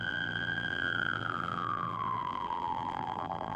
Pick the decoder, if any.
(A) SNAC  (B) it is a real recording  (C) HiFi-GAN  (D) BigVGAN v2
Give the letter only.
D